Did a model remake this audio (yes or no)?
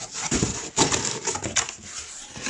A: no